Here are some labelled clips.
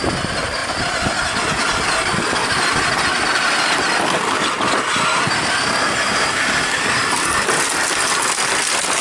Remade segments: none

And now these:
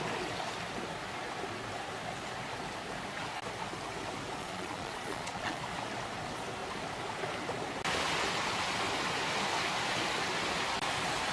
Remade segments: 4.4-5.6 (vocoder, Vocos)

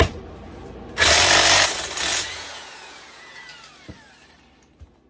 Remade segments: 2.1-3.4 (vocoder, Vocos)

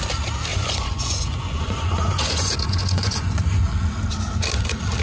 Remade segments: 0.5-3.4 (vocoder, Vocos)

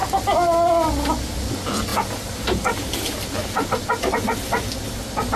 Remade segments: none

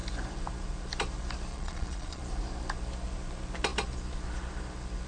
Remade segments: 1.5-2.2 (vocoder, Vocos)

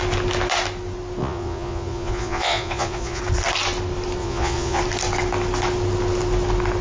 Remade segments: 1.2-3.2 (vocoder, Vocos); 4.2-4.8